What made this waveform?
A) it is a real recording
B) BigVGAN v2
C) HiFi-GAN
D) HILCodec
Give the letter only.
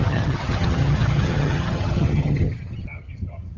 C